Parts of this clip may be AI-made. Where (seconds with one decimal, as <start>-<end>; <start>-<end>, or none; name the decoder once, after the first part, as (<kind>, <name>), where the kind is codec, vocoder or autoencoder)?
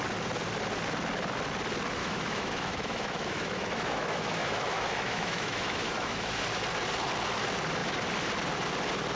2.0-6.4 (autoencoder, DAC-VAE)